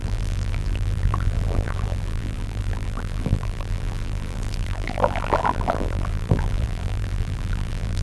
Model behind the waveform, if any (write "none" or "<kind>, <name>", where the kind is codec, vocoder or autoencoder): vocoder, BigVGAN v2